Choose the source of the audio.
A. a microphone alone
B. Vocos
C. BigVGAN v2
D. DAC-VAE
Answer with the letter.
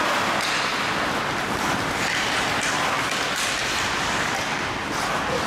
A